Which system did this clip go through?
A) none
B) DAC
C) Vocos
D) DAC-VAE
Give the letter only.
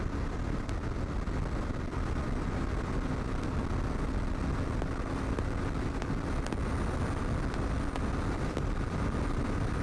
A